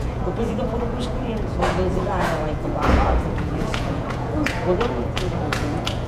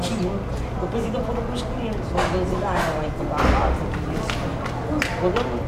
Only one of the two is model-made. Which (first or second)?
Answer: first